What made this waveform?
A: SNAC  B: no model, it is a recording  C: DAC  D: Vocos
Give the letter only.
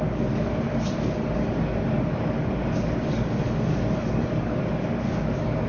C